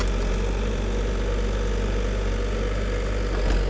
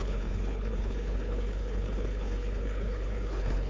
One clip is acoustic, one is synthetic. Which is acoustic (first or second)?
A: first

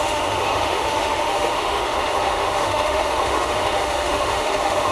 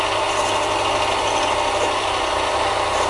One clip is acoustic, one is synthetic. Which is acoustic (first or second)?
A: second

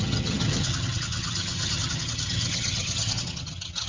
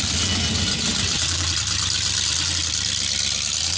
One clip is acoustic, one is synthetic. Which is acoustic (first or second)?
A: second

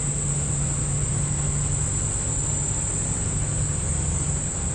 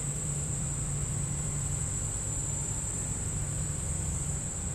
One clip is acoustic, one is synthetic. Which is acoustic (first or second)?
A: first